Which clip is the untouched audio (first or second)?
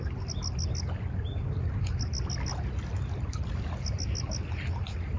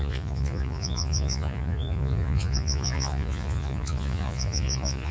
first